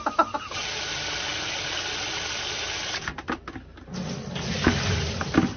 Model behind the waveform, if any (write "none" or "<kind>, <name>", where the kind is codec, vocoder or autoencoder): none